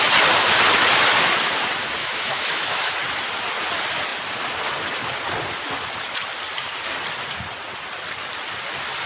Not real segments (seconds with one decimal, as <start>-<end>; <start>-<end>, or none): 2.0-2.9